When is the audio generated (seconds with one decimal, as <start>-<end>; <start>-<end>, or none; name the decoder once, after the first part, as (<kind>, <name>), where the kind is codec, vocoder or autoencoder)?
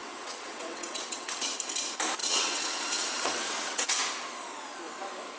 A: 0.0-1.5 (vocoder, WaveNeXt); 2.2-4.0